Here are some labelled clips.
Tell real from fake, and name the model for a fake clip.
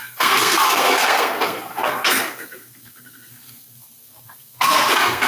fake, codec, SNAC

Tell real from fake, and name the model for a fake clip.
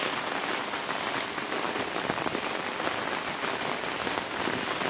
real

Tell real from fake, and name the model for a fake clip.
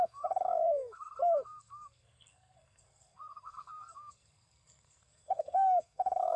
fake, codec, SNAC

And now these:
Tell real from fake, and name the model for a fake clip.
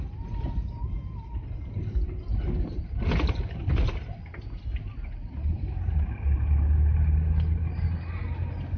real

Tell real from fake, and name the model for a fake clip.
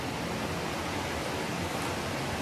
real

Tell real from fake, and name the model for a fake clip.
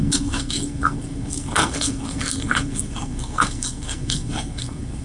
fake, codec, SNAC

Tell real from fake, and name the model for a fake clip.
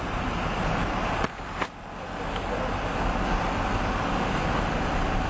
real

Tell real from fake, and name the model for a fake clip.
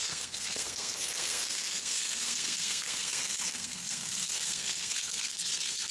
fake, codec, SNAC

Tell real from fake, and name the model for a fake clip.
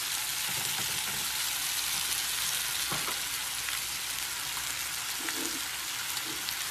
real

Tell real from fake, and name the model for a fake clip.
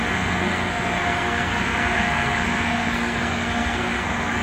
fake, codec, SNAC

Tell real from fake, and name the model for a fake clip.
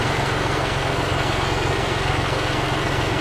fake, codec, SNAC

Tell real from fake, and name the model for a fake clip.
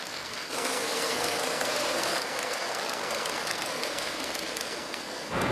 fake, codec, SNAC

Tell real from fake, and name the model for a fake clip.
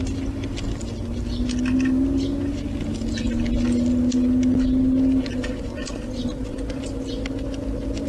real